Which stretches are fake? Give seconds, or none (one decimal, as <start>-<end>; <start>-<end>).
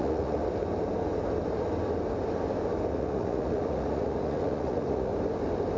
0.0-0.4; 2.9-5.1